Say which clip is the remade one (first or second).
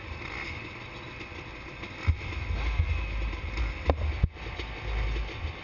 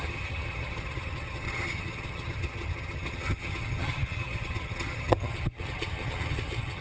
second